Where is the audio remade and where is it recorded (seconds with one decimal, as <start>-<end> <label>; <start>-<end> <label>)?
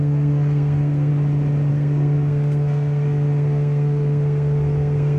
0.0-1.1 remade; 1.1-1.7 recorded; 1.7-5.2 remade